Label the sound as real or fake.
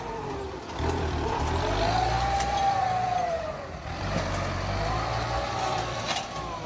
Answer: fake